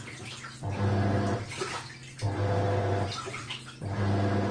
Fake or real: real